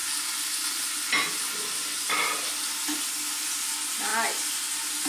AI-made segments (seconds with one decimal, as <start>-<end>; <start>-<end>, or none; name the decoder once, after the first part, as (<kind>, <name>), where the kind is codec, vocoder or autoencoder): none